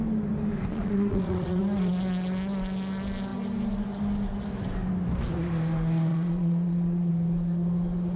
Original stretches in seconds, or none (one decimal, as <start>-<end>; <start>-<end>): 0.0-0.7; 1.6-6.1; 7.1-8.2